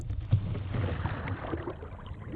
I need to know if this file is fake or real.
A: real